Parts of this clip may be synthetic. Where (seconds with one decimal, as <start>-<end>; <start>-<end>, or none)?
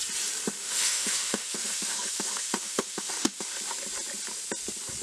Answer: 0.6-3.6